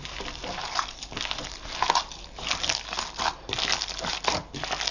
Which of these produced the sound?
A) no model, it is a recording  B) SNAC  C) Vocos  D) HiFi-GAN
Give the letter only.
A